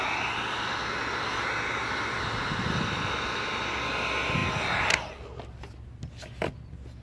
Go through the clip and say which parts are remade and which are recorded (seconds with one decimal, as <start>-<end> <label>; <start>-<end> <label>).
0.0-7.0 recorded